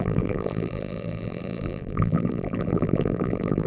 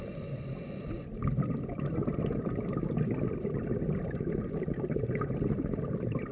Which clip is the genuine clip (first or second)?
second